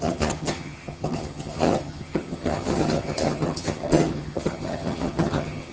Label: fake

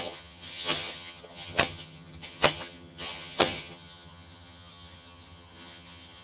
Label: fake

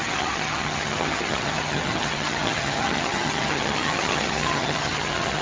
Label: fake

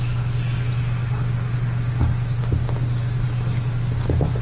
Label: real